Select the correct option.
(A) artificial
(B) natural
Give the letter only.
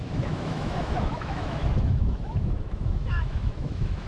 A